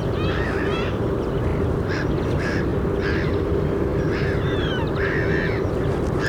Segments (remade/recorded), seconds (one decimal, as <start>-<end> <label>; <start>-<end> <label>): 0.0-6.3 recorded